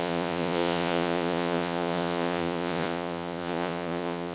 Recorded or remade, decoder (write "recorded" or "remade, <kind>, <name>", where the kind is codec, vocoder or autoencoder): remade, vocoder, Vocos